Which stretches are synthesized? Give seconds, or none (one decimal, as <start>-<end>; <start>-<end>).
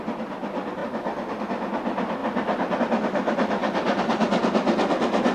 3.6-4.2